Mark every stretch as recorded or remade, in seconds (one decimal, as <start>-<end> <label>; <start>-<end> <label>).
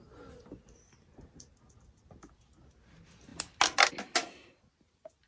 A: 0.0-5.3 recorded